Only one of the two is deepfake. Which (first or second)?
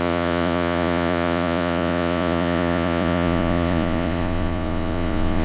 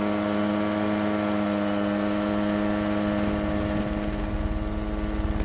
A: first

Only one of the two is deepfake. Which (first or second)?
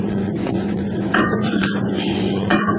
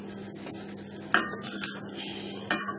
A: first